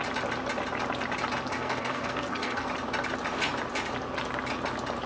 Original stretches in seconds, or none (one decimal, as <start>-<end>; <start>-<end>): 0.0-1.5; 2.7-5.1